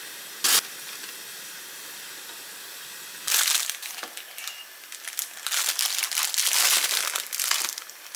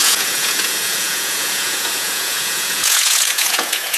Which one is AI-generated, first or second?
second